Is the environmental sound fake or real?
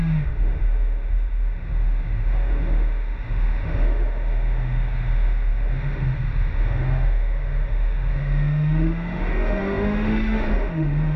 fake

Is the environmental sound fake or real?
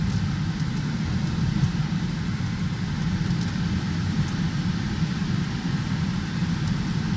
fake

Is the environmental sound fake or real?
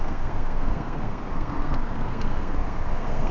fake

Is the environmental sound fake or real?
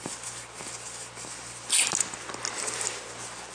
real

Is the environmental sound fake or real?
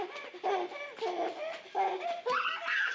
real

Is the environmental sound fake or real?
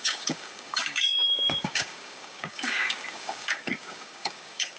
fake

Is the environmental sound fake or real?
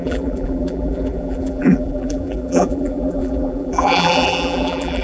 fake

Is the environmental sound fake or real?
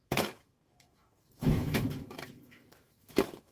fake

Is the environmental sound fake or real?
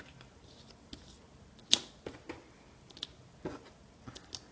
real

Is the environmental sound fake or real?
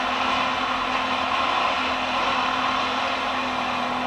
real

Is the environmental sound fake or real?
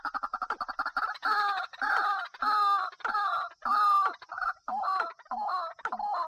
real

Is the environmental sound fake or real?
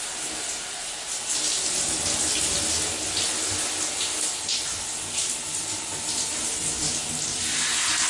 real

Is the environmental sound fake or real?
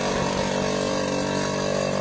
real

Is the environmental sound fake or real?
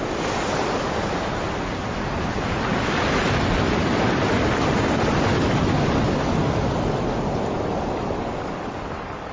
real